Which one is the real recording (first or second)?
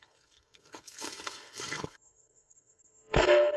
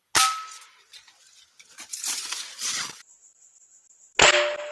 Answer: second